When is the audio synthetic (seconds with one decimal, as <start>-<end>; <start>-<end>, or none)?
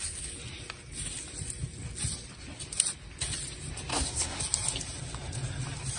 3.9-4.4